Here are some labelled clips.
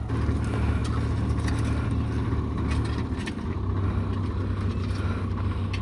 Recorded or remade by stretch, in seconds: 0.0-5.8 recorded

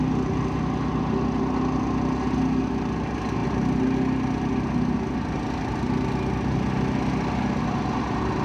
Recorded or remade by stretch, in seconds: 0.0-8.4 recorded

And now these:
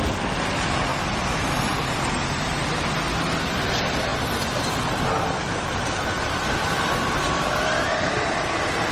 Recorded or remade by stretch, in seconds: 0.0-0.9 recorded; 0.9-2.2 remade; 2.2-4.1 recorded; 4.1-8.1 remade; 8.1-8.9 recorded